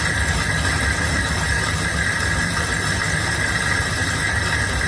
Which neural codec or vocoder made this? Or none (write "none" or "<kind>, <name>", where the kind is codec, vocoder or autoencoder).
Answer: none